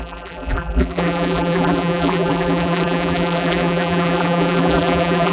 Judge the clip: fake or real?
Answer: fake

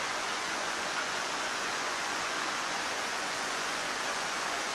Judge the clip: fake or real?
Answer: fake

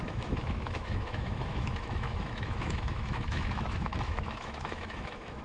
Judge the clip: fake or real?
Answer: fake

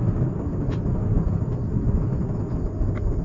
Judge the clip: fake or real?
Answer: real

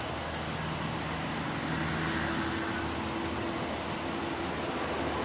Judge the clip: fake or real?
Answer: real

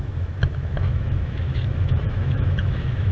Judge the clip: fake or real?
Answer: fake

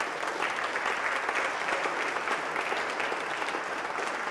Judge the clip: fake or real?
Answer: real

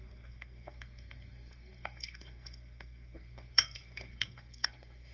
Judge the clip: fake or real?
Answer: fake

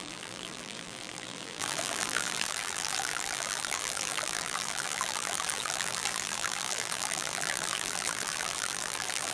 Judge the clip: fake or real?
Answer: fake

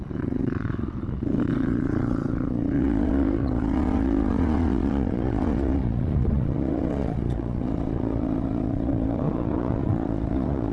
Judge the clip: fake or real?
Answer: fake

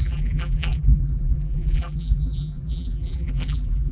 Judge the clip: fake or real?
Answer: fake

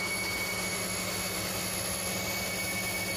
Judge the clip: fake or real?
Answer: real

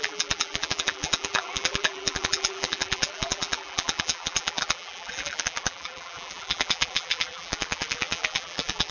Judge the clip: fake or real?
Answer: fake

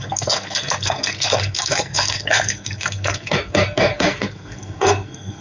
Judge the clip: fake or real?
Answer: fake